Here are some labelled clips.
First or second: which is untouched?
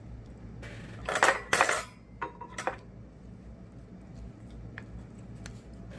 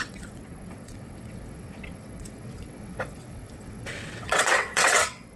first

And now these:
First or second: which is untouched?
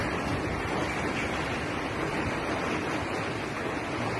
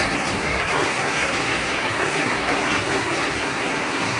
first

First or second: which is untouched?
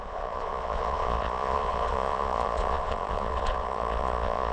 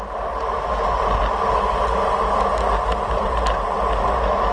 second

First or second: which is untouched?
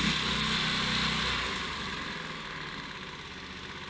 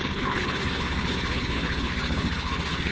first